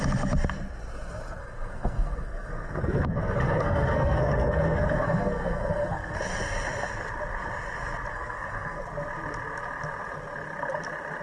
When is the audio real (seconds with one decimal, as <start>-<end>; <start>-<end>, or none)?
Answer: 0.0-1.4; 6.2-8.1; 8.8-11.2